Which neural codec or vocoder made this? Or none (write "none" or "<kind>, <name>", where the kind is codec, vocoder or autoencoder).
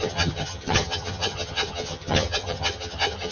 vocoder, HiFi-GAN